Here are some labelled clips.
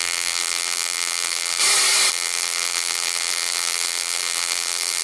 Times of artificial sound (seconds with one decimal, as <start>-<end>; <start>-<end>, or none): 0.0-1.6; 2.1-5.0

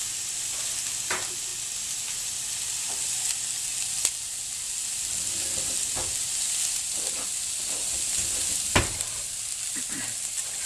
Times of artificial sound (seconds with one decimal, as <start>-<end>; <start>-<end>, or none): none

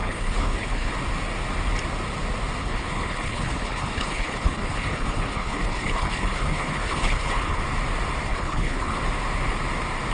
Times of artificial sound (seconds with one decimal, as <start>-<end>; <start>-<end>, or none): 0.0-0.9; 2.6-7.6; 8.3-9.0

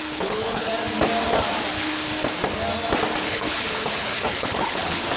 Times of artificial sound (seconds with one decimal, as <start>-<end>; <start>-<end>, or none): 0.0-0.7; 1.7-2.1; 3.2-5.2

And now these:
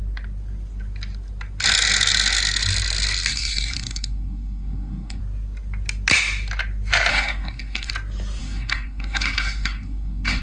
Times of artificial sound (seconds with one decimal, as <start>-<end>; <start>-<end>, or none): 3.3-5.2; 7.1-7.9; 8.4-10.4

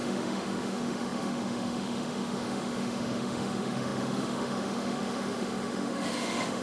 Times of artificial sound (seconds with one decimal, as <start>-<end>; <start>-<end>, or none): 0.0-6.6

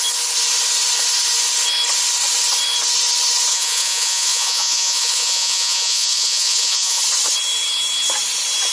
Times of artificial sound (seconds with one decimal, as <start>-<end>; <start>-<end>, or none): 3.5-7.0